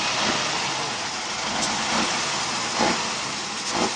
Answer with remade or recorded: recorded